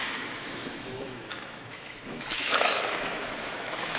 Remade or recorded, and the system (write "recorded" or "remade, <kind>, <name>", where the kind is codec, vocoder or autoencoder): remade, autoencoder, DAC-VAE